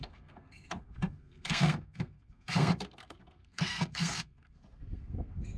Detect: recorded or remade remade